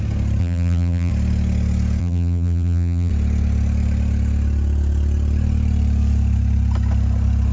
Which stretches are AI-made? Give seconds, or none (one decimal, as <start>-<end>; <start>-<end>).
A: 0.4-1.1; 2.0-3.1